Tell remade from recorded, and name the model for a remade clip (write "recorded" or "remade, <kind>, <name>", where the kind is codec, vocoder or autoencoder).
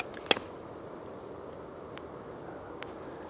recorded